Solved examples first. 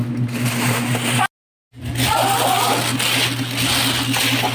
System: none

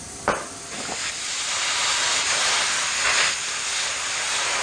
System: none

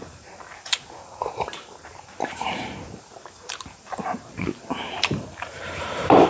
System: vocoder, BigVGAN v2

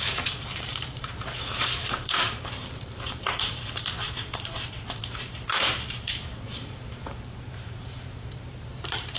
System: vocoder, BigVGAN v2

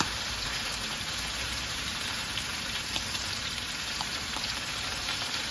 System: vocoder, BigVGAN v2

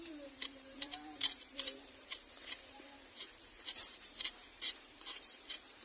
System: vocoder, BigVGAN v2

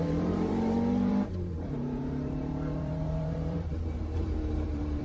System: vocoder, BigVGAN v2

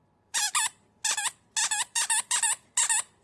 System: vocoder, BigVGAN v2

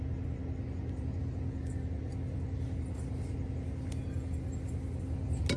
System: none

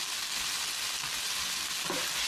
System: none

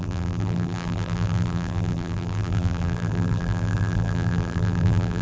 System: vocoder, BigVGAN v2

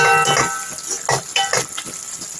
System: none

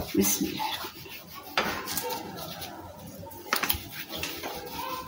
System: none